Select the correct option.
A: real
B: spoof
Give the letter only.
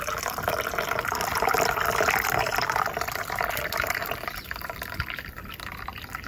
B